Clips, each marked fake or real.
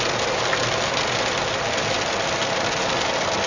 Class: real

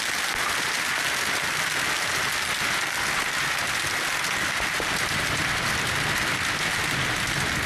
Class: real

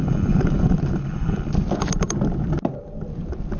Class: fake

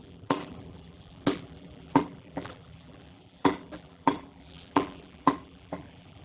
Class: fake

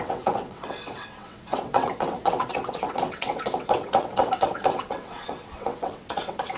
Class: fake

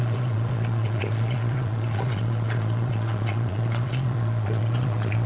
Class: fake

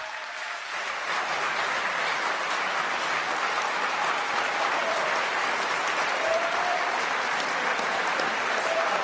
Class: fake